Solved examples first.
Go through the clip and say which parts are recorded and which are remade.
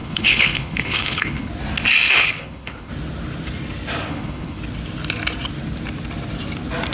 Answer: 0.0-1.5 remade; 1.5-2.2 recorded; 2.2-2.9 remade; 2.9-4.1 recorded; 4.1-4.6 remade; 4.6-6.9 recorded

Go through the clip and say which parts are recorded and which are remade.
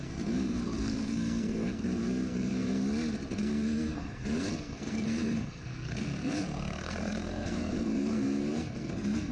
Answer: 0.0-2.8 remade; 2.8-3.3 recorded; 3.3-9.3 remade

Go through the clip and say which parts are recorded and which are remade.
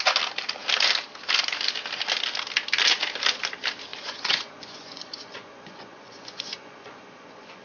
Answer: 0.0-3.9 recorded; 3.9-7.6 remade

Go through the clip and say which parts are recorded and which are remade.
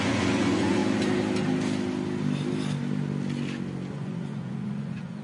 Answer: 0.0-0.8 remade; 0.8-3.9 recorded; 3.9-5.2 remade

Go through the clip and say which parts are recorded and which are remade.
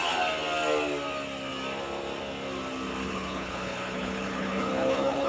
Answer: 0.0-3.0 recorded; 3.0-5.3 remade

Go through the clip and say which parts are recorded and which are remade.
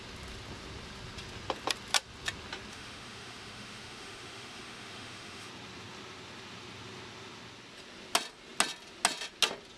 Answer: 0.0-2.7 recorded; 2.7-5.5 remade; 5.5-9.8 recorded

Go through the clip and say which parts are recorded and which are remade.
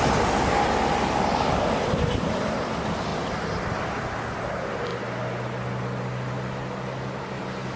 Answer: 0.0-7.8 recorded